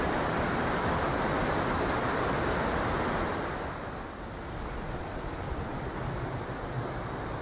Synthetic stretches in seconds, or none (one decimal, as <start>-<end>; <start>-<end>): none